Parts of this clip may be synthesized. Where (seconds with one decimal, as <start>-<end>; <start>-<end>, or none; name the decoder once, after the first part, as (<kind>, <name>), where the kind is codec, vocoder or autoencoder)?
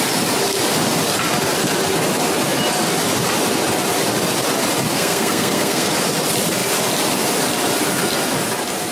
4.9-5.9 (codec, SNAC)